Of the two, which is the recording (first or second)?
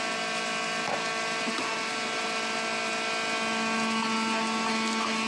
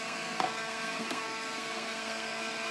first